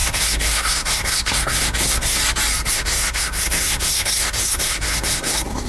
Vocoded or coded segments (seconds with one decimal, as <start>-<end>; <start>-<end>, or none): 0.0-2.2; 2.7-5.7